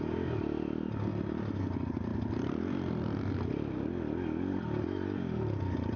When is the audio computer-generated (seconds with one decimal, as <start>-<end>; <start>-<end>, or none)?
none